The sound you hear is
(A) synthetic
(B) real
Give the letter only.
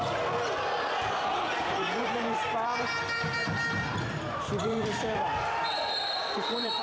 A